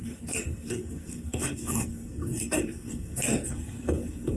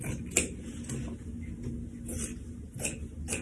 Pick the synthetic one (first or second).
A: first